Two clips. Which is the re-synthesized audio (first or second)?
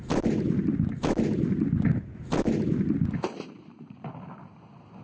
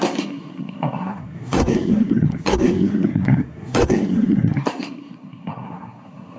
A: second